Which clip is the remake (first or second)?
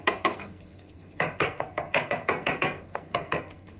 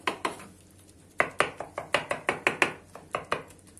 first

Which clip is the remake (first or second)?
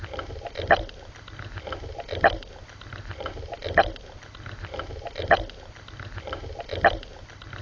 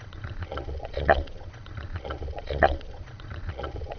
second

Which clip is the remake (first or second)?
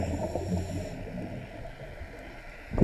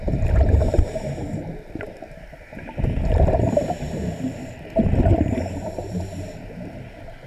second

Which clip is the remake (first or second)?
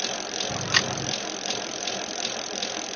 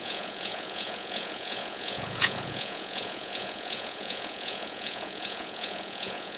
second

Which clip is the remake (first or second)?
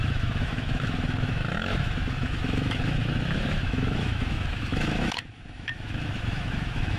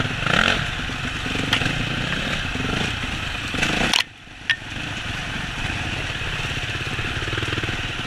first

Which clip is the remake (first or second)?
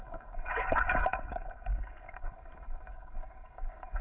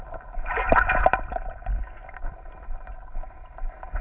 first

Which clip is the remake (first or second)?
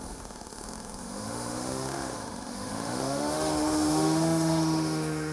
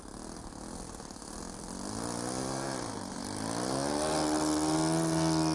first